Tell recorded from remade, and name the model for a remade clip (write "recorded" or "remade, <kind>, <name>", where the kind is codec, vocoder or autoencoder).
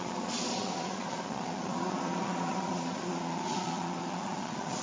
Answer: remade, vocoder, Vocos